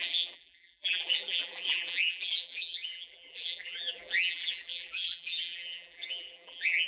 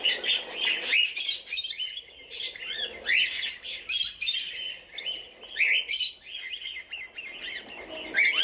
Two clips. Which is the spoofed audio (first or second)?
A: first